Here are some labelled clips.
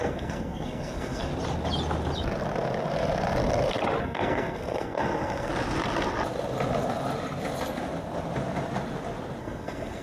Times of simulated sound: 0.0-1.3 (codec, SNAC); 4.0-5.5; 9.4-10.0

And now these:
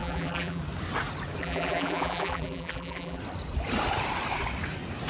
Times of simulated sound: 0.0-0.6 (vocoder, BigVGAN v2); 1.4-3.2

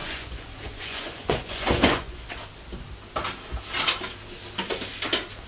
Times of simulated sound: 0.0-2.3 (vocoder, Vocos)

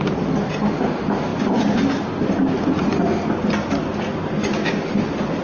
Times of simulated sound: none

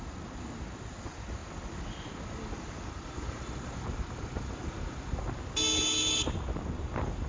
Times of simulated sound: none

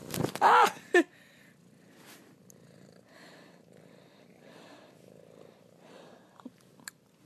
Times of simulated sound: none

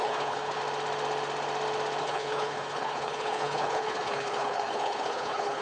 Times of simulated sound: 0.0-0.6 (codec, HILCodec); 2.0-5.6